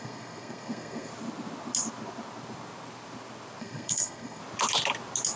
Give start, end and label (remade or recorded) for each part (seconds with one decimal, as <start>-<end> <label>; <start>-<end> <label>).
0.0-1.1 remade; 1.1-3.6 recorded; 3.6-4.4 remade; 4.4-5.4 recorded